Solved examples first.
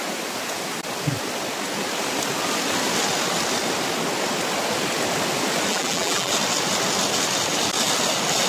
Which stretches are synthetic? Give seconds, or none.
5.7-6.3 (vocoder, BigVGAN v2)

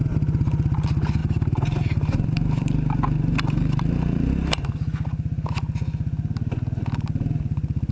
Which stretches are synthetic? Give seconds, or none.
1.2-4.6 (vocoder, BigVGAN v2)

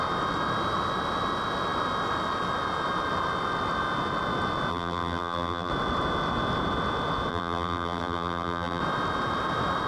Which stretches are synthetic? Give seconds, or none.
4.7-5.7 (vocoder, BigVGAN v2); 7.3-8.8

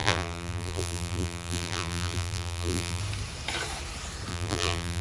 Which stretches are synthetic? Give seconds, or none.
0.0-3.0 (vocoder, BigVGAN v2); 4.3-5.0

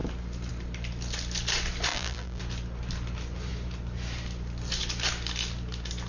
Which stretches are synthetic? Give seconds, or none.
1.9-2.4 (vocoder, BigVGAN v2)